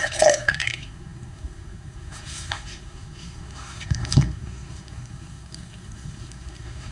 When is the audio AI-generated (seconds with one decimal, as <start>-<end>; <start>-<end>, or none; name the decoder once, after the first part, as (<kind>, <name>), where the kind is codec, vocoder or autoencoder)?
0.0-6.9 (codec, SNAC)